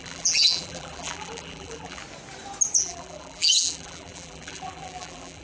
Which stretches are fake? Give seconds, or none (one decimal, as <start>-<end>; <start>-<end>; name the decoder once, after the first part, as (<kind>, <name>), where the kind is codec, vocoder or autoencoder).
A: 0.0-2.0 (vocoder, BigVGAN v2); 2.8-5.4